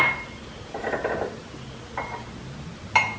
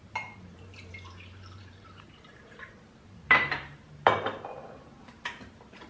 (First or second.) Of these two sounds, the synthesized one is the second